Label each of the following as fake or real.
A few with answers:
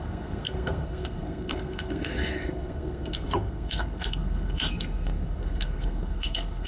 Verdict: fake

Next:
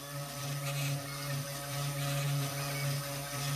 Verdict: real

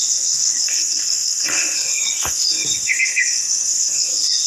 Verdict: fake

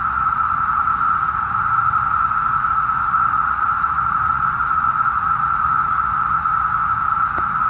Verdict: fake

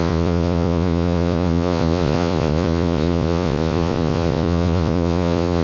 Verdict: fake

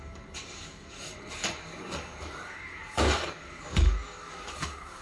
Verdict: fake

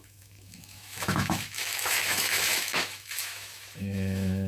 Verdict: fake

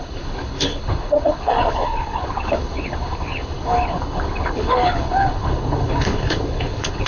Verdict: fake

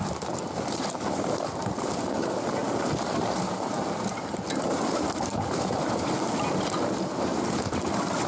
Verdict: real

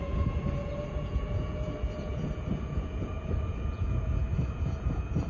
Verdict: fake